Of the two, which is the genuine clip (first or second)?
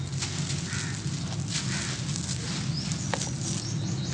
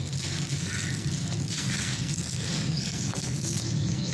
first